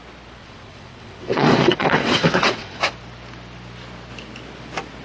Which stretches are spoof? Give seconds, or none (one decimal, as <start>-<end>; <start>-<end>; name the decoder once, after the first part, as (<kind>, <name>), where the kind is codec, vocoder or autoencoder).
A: 0.4-2.9 (vocoder, WaveNeXt)